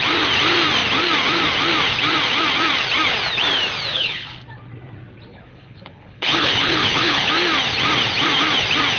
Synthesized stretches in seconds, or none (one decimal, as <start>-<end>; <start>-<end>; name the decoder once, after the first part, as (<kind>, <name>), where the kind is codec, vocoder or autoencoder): 3.9-4.4 (codec, HILCodec); 5.3-7.3